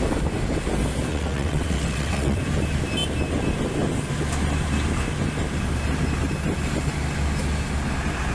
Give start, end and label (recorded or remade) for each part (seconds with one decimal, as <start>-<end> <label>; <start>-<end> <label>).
0.0-1.1 recorded; 1.1-2.4 remade; 2.4-8.3 recorded